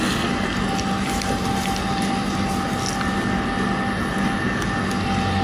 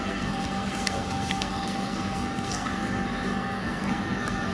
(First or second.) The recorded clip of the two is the first